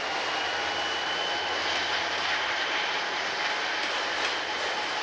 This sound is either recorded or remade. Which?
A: recorded